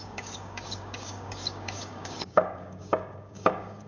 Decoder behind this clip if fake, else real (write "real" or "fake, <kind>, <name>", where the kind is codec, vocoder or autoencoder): fake, codec, DAC